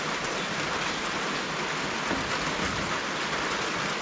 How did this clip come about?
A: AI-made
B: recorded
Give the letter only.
B